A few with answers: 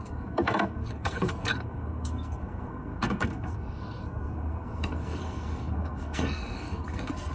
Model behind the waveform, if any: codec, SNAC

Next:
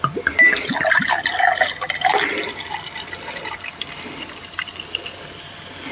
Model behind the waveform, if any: none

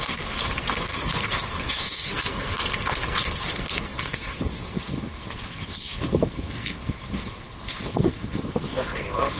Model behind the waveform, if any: codec, SNAC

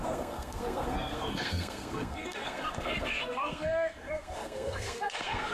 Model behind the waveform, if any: codec, SNAC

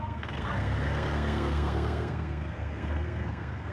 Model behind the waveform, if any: codec, SNAC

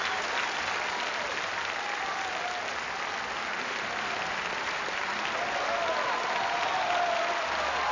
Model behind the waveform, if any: none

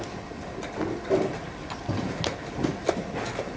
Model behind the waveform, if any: none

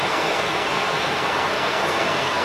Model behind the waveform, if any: codec, SNAC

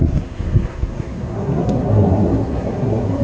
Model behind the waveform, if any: codec, SNAC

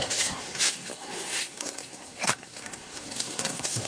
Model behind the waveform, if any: codec, SNAC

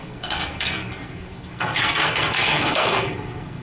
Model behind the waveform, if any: codec, SNAC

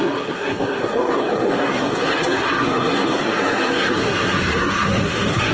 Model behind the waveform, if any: codec, SNAC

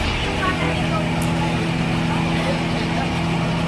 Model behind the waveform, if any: none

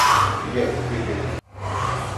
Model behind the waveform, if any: none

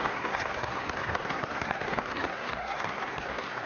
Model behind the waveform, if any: codec, SNAC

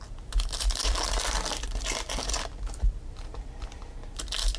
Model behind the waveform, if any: none